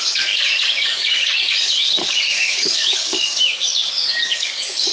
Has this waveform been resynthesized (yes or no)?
yes